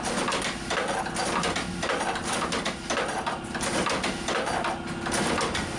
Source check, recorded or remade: recorded